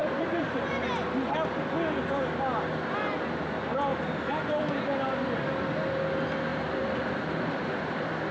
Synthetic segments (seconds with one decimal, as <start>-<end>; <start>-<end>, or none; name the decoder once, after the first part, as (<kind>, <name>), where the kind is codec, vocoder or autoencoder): 0.0-0.7 (vocoder, BigVGAN v2); 6.5-7.7